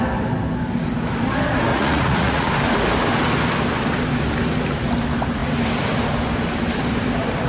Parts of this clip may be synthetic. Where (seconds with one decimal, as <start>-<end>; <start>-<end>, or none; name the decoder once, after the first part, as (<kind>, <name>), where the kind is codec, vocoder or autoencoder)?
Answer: 1.7-2.5 (vocoder, Vocos)